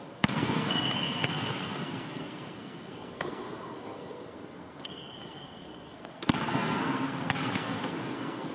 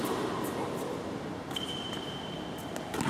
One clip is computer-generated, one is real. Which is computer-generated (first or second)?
first